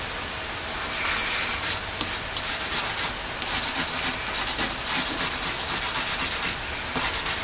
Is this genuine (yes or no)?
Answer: yes